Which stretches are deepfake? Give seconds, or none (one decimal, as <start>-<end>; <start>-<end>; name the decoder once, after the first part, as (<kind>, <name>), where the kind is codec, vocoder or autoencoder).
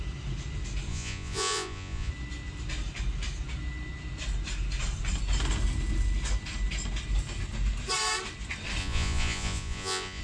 0.9-2.1 (vocoder, Vocos); 8.8-10.2